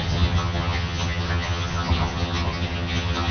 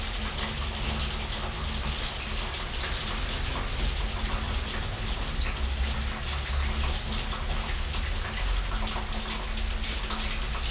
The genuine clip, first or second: second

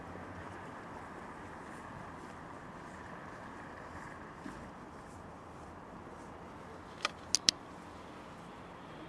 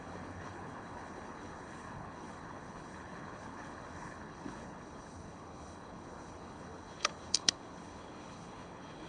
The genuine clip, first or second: first